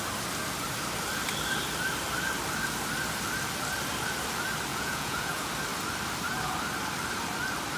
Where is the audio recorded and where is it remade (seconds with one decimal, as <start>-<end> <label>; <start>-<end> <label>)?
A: 0.0-4.7 recorded; 4.7-5.5 remade; 5.5-7.8 recorded